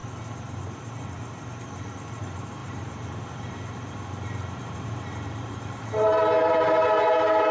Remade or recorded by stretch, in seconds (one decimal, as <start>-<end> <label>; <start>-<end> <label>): 0.0-0.6 recorded; 0.6-7.5 remade